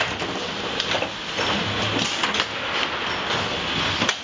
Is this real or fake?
real